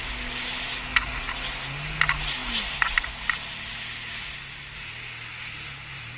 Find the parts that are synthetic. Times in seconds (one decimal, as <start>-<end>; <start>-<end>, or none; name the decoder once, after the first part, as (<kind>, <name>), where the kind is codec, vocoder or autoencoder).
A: none